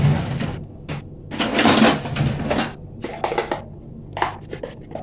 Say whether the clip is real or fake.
real